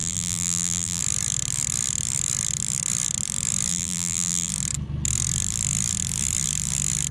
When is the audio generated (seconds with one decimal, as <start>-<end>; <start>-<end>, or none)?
0.0-1.0; 3.7-4.5